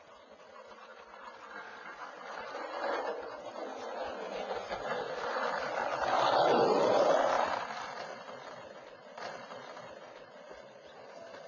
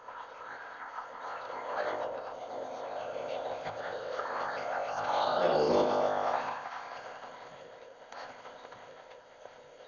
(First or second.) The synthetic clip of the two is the second